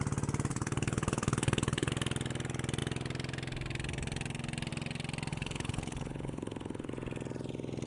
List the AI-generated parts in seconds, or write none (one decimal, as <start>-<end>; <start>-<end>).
0.5-1.9; 5.3-6.9